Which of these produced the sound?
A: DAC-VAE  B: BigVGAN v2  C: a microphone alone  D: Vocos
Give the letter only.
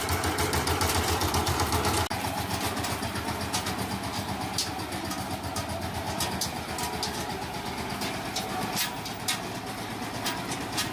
C